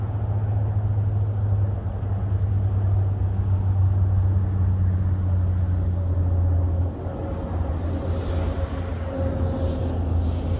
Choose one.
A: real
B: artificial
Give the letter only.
A